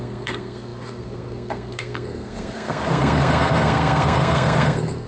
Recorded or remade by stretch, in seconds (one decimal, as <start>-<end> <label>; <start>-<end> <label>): 0.0-5.1 remade